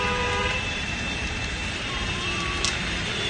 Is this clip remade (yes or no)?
yes